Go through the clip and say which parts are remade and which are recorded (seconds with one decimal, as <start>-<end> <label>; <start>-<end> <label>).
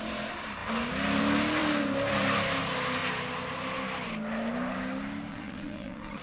0.0-5.3 recorded; 5.3-6.2 remade